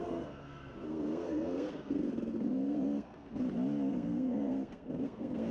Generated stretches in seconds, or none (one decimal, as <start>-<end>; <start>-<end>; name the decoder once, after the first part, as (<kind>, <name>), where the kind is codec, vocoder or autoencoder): 0.0-3.4 (codec, SNAC); 3.9-5.5